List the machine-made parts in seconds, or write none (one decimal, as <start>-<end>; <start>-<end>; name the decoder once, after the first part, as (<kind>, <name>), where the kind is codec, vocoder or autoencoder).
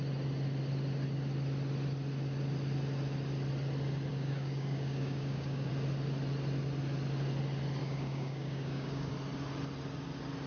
4.1-5.7 (codec, DAC); 7.8-9.1